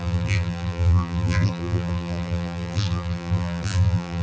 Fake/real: fake